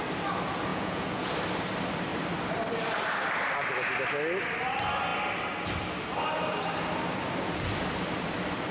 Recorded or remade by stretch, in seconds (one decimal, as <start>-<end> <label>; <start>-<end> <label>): 0.0-0.7 recorded; 0.7-1.3 remade; 1.3-8.7 recorded